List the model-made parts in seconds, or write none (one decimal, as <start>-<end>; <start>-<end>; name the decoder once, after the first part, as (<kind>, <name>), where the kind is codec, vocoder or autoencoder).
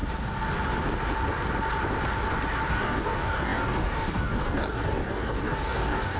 2.7-6.2 (codec, DAC)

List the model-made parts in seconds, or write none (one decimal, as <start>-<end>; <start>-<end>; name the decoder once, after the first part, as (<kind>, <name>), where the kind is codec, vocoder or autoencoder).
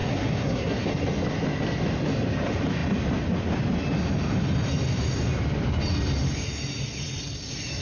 0.0-0.9 (codec, SNAC)